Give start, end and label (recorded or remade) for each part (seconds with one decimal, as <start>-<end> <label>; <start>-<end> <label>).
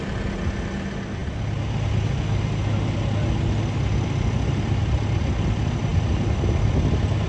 0.0-7.3 recorded